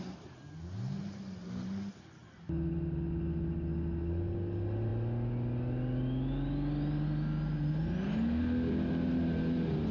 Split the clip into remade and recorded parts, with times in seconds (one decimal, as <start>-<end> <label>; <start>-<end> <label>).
0.0-9.9 recorded